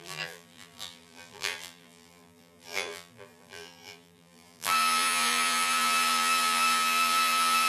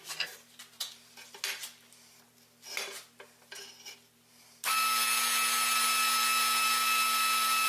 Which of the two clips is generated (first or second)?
first